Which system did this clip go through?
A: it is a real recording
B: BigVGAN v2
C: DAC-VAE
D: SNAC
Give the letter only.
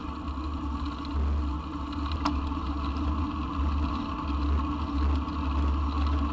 A